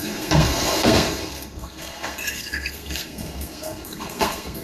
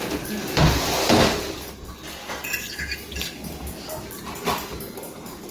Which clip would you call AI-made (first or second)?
first